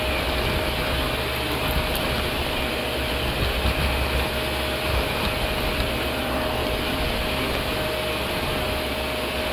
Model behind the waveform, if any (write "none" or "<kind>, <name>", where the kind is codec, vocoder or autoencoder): none